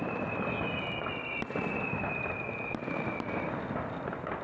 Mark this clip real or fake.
real